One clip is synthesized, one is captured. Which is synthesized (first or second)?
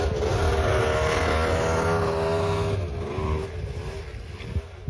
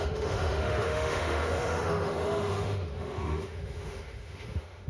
second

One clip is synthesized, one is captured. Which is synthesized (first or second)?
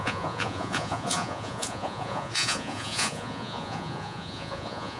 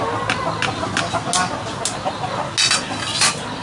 first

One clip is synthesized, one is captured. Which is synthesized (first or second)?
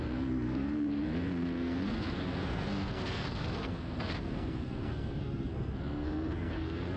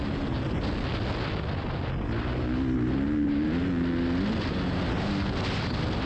first